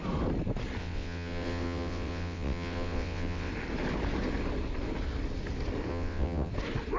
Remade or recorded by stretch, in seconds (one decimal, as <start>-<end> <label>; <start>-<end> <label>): 0.0-0.8 recorded; 0.8-3.5 remade; 3.5-5.9 recorded; 5.9-6.5 remade; 6.5-7.0 recorded